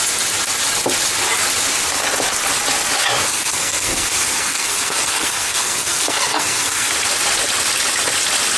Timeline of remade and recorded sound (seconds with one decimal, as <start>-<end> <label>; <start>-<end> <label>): 0.0-3.2 recorded; 3.2-6.9 remade; 6.9-8.6 recorded